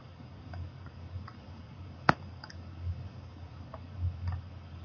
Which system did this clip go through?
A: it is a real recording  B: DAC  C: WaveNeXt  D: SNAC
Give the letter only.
B